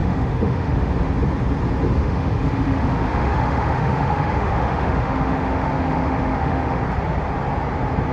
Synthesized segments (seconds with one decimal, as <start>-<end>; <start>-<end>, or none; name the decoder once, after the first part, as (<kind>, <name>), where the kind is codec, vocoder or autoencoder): 0.0-0.9 (autoencoder, DAC-VAE); 2.0-6.8